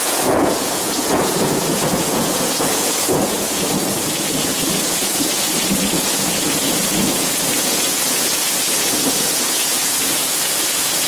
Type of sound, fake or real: fake